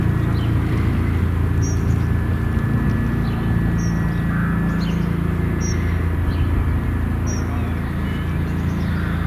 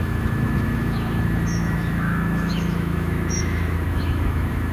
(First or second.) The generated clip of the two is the second